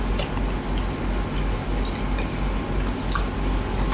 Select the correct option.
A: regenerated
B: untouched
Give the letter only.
B